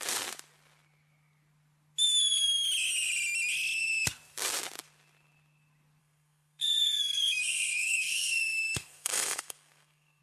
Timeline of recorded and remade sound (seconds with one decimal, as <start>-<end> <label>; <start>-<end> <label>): 0.0-6.0 recorded; 6.0-10.2 remade